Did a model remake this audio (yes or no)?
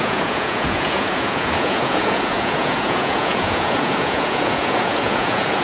yes